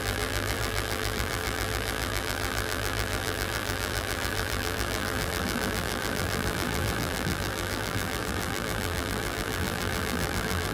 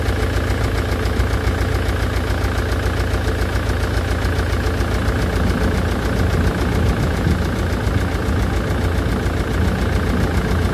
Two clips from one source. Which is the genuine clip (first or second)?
second